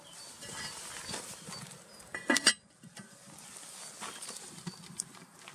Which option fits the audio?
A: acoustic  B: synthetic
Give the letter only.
A